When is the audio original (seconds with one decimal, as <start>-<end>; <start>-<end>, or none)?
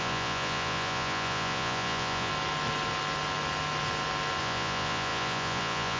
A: 2.3-4.4